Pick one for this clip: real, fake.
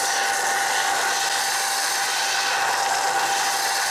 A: real